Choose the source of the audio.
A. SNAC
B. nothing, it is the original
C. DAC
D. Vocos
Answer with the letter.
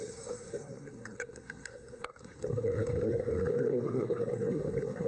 A